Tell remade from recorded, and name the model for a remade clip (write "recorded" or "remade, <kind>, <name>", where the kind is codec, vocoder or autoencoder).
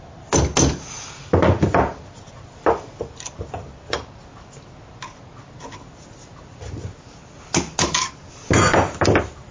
recorded